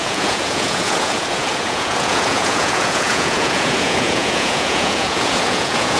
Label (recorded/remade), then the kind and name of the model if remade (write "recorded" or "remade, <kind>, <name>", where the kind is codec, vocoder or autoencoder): remade, vocoder, Vocos